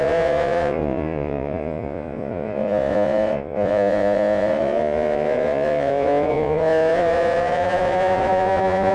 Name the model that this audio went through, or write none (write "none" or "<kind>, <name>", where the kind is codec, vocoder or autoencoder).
vocoder, Vocos